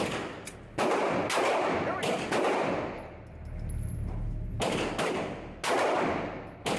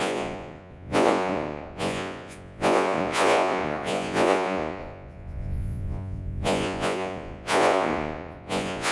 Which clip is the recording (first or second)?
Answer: first